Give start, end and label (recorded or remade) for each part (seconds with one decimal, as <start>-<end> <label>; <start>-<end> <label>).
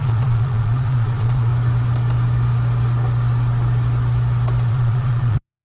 0.0-1.5 remade; 1.5-4.7 recorded; 4.7-5.6 remade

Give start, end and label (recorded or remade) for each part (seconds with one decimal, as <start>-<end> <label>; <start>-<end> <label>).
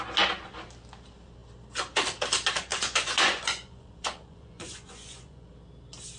0.0-2.7 recorded; 2.7-5.5 remade; 5.5-6.2 recorded